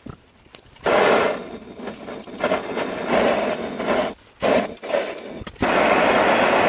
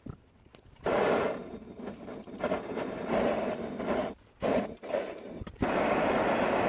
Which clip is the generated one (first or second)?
second